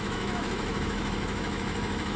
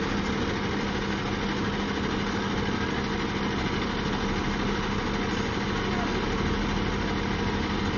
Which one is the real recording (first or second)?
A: second